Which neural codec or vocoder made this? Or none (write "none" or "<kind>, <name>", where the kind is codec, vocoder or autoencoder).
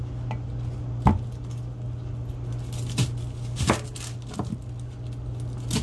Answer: none